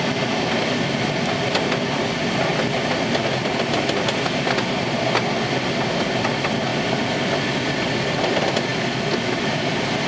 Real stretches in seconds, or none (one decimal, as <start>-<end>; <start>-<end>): 0.0-2.5; 3.5-10.1